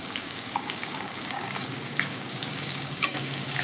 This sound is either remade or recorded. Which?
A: remade